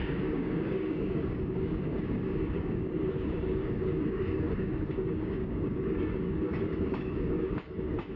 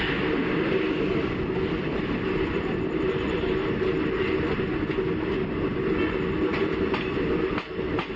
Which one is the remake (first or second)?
first